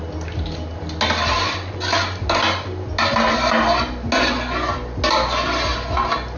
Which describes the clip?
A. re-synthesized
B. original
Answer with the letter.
B